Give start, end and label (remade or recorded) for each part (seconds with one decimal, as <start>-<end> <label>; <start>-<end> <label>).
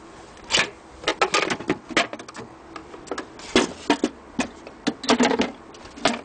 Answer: 0.0-6.2 recorded